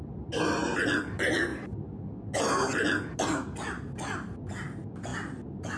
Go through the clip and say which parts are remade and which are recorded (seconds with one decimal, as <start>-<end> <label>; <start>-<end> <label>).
0.0-5.8 recorded